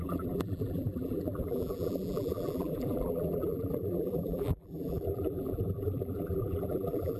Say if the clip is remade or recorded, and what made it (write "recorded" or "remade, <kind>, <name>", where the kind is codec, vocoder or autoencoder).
remade, vocoder, BigVGAN v2